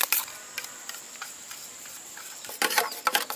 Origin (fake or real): fake